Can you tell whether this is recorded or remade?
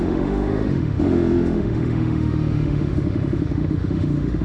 remade